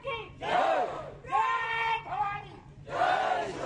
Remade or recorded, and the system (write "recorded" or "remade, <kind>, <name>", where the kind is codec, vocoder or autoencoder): recorded